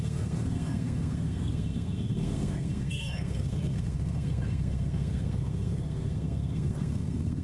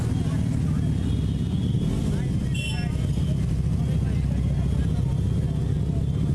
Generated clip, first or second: first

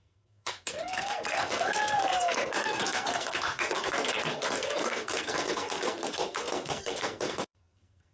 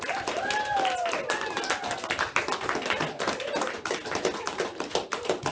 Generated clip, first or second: first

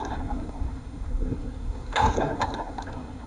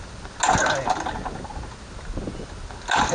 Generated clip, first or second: first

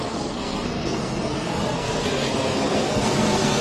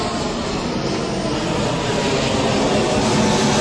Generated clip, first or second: first